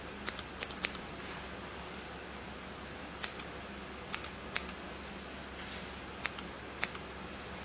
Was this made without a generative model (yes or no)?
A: yes